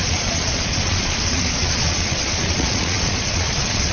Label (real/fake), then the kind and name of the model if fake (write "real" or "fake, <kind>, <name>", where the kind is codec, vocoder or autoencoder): fake, vocoder, Vocos